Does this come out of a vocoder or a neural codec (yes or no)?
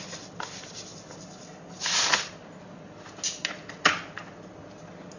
no